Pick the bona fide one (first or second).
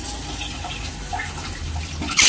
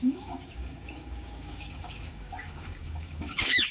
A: first